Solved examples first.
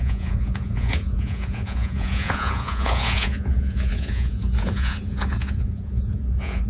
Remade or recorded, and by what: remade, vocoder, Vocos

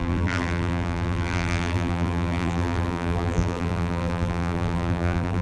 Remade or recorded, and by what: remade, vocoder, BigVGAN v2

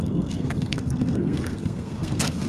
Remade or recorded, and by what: remade, codec, SNAC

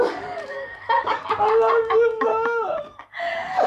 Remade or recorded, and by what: remade, codec, DAC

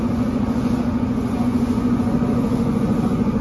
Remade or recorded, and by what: remade, vocoder, Vocos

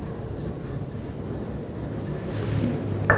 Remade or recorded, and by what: recorded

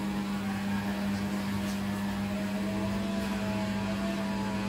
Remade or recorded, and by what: recorded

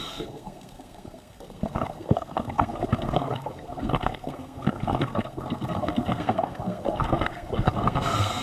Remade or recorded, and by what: remade, codec, SNAC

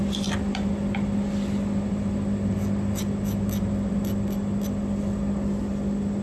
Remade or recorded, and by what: recorded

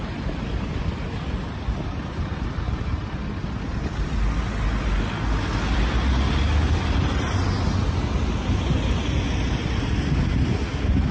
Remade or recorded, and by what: recorded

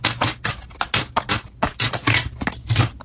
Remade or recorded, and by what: recorded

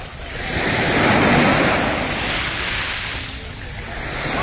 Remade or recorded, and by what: recorded